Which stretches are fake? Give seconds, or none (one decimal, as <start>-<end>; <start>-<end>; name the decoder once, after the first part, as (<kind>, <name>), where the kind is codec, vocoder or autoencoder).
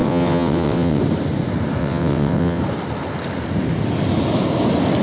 0.0-1.0 (vocoder, WaveNeXt); 1.8-2.6